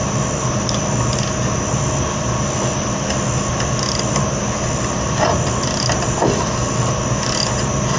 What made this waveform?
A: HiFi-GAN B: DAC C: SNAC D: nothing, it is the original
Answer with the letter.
D